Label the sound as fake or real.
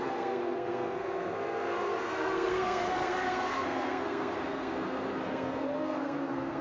fake